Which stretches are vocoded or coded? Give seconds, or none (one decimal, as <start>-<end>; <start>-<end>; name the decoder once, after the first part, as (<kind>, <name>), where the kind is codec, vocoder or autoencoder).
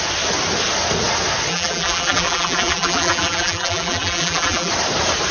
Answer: 1.5-4.7 (vocoder, BigVGAN v2)